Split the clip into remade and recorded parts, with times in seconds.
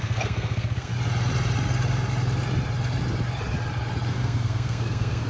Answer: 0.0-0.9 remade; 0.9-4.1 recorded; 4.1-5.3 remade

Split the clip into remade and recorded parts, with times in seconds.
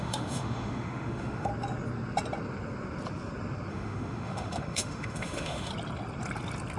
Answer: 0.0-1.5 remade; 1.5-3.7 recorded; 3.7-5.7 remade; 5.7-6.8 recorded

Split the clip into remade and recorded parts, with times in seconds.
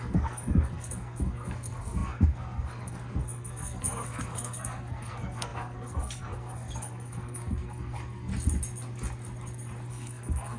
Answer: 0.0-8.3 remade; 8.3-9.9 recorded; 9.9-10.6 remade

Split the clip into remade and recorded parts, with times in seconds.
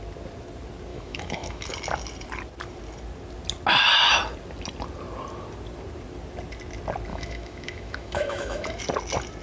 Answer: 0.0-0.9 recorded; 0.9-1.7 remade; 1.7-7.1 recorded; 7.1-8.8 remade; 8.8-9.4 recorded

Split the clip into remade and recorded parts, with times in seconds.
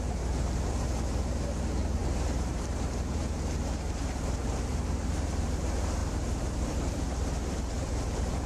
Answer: 0.0-8.5 remade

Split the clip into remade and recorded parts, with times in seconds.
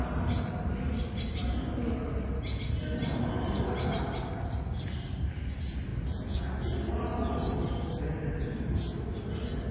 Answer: 0.0-9.7 recorded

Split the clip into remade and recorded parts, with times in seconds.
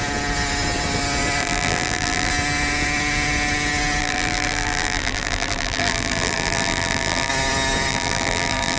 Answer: 0.0-1.4 recorded; 1.4-2.3 remade; 2.3-4.0 recorded; 4.0-7.3 remade; 7.3-7.9 recorded; 7.9-8.8 remade